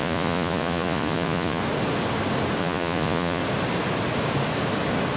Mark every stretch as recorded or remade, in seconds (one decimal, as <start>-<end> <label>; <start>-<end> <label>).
0.0-1.6 remade; 1.6-2.6 recorded; 2.6-3.4 remade; 3.4-5.2 recorded